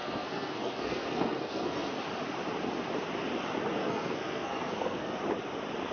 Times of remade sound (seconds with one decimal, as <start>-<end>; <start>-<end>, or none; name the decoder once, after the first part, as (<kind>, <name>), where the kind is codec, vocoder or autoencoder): 0.0-2.0 (codec, SNAC); 3.8-5.2